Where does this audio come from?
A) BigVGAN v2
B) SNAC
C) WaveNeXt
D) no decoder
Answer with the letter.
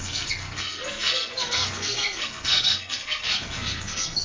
B